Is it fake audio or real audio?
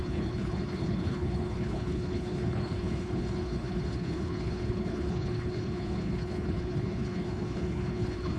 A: fake